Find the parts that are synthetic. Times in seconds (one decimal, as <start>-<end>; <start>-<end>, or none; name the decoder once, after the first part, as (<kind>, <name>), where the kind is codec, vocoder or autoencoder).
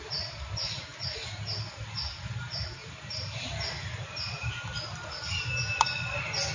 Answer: 2.8-4.5 (vocoder, BigVGAN v2)